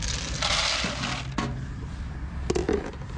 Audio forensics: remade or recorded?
recorded